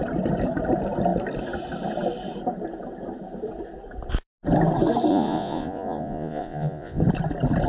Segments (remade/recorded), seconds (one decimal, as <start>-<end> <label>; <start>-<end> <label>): 0.0-5.1 recorded; 5.1-7.0 remade; 7.0-7.7 recorded